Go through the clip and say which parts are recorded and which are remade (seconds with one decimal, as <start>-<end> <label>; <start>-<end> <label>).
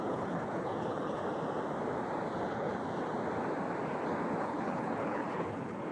0.0-1.2 remade; 1.2-2.4 recorded; 2.4-2.8 remade; 2.8-4.4 recorded; 4.4-5.9 remade